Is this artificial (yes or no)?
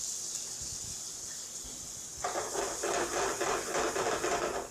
no